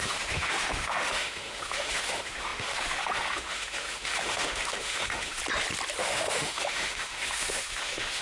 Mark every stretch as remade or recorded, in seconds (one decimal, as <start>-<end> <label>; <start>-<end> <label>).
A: 0.0-5.4 remade; 5.4-6.0 recorded; 6.0-8.2 remade